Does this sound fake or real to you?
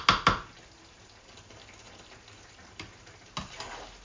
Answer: real